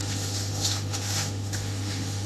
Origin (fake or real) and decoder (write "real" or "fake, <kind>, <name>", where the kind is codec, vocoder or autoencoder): fake, autoencoder, DAC-VAE